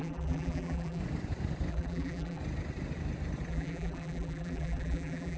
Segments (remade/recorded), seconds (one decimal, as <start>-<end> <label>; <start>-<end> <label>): 0.0-1.0 remade; 1.0-1.7 recorded; 1.7-2.4 remade; 2.4-3.5 recorded; 3.5-5.4 remade